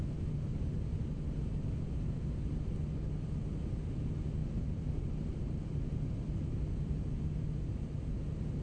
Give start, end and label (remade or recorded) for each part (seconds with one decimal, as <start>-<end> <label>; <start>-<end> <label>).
0.0-0.5 recorded; 0.5-2.2 remade; 2.2-4.4 recorded; 4.4-5.0 remade; 5.0-8.6 recorded